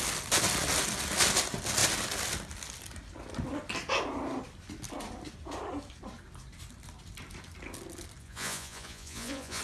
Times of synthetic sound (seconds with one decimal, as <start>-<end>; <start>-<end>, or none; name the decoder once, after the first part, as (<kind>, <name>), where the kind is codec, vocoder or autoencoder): 8.2-9.6 (vocoder, Vocos)